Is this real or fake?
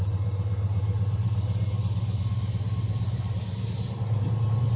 fake